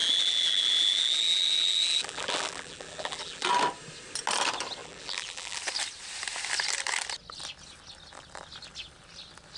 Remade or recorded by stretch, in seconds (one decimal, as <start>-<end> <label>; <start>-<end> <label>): 0.0-3.5 remade; 3.5-4.8 recorded; 4.8-5.6 remade; 5.6-9.6 recorded